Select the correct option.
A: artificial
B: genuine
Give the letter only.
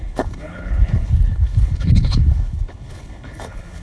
A